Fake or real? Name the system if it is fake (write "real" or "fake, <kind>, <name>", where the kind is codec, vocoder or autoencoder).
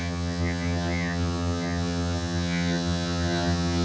fake, vocoder, HiFi-GAN